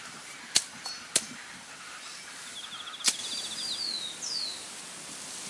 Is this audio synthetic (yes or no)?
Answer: no